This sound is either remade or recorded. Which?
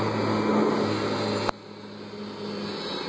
recorded